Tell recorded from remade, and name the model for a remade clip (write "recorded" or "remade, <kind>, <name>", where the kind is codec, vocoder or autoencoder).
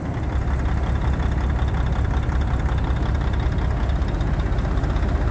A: recorded